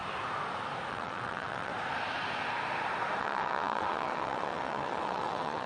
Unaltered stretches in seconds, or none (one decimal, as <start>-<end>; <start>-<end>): 0.0-0.9; 1.7-3.2